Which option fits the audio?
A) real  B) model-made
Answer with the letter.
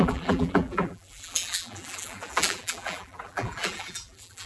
B